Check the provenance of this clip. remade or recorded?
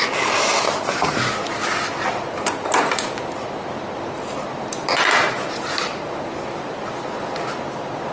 recorded